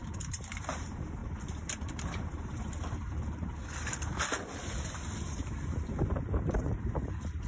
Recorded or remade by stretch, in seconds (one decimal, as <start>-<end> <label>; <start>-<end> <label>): 0.0-3.6 remade; 3.6-5.1 recorded; 5.1-7.5 remade